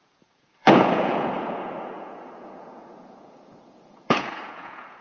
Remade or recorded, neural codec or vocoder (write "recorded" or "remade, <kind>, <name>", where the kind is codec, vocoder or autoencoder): remade, vocoder, Vocos